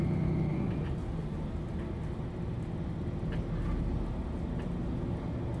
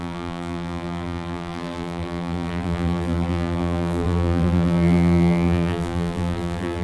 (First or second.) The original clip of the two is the first